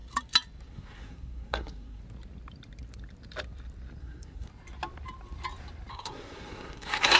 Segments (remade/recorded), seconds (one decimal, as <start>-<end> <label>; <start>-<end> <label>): 0.0-0.7 recorded; 0.7-2.0 remade; 2.0-4.0 recorded; 4.0-4.5 remade; 4.5-5.9 recorded; 5.9-7.2 remade